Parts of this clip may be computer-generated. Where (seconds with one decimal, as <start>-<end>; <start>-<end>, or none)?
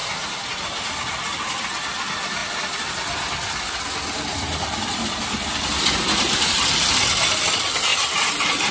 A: 5.7-6.6; 7.9-8.7